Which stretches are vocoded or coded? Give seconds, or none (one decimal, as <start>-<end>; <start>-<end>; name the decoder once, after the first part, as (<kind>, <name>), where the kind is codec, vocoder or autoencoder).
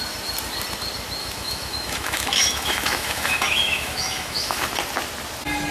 1.2-4.6 (autoencoder, DAC-VAE)